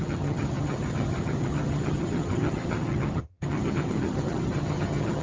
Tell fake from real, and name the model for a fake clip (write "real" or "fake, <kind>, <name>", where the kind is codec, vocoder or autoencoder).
fake, vocoder, HiFi-GAN